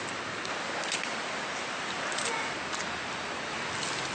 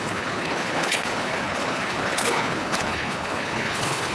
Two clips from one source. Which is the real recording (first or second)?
first